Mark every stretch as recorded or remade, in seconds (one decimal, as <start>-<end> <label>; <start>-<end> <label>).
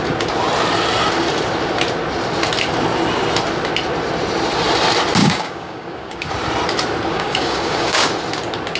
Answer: 0.0-5.2 recorded; 5.2-6.3 remade; 6.3-7.1 recorded; 7.1-8.1 remade; 8.1-8.8 recorded